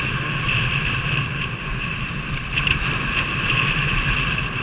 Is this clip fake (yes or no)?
yes